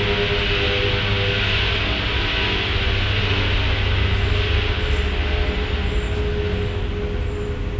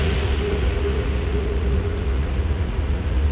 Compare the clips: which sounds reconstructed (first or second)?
second